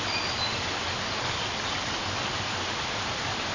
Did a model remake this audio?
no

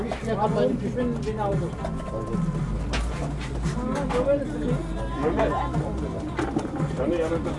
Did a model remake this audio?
no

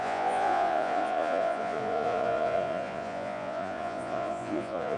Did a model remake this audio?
yes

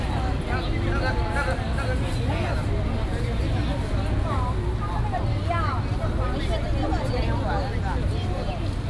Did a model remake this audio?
no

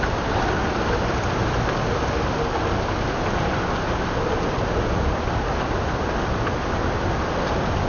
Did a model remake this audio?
no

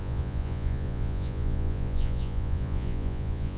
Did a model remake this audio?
yes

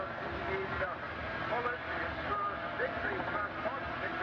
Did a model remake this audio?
no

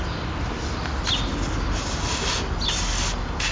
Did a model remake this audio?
no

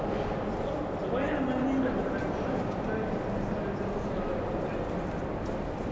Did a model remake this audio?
no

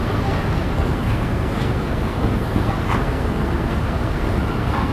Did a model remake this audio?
yes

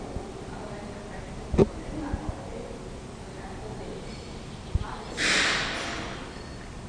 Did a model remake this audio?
no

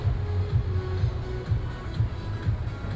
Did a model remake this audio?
no